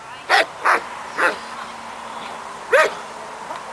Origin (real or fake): real